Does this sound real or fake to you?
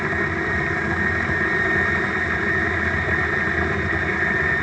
real